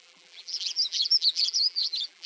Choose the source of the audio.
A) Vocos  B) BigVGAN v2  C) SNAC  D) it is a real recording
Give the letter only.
B